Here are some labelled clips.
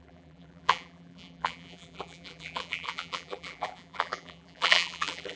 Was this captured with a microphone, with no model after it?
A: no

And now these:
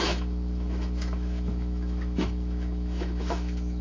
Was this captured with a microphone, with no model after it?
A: no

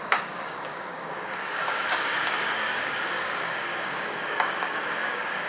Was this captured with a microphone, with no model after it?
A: no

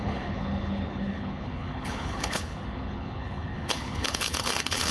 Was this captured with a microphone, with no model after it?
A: no